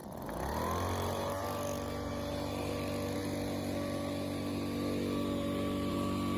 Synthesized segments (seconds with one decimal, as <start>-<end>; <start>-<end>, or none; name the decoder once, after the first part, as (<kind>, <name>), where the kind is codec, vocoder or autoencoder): none